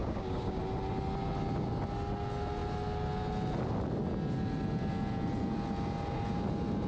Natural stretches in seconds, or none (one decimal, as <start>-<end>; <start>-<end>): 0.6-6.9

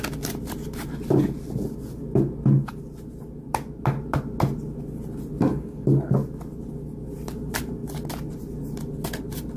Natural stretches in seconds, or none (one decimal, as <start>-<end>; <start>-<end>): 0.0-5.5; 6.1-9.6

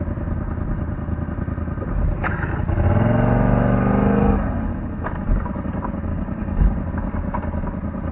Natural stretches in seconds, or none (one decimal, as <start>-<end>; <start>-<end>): 0.0-6.1; 6.9-8.1

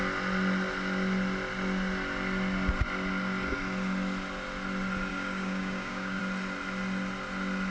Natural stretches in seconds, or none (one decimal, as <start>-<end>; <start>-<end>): 0.0-5.1; 6.2-7.7

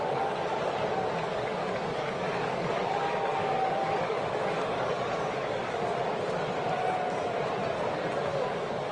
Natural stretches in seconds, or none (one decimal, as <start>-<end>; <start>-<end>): 0.0-0.9; 5.8-8.3